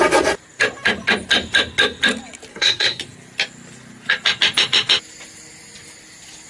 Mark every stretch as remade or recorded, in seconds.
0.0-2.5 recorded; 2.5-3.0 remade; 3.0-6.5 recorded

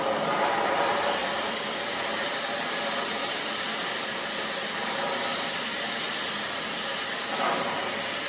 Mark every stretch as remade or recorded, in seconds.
0.0-1.2 recorded; 1.2-1.9 remade; 1.9-3.2 recorded; 3.2-3.9 remade; 3.9-5.7 recorded; 5.7-6.6 remade; 6.6-8.3 recorded